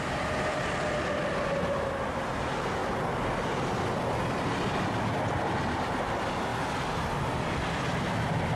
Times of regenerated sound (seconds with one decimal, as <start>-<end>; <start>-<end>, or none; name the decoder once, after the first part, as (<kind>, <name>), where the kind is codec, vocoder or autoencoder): none